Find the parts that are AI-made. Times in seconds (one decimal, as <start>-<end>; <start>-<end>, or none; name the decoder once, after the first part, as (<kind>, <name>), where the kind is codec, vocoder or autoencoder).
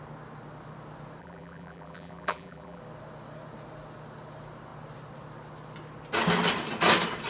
1.2-2.8 (vocoder, BigVGAN v2)